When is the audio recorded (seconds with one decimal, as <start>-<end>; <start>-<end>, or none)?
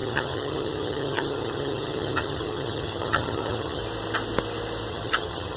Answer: 3.8-4.9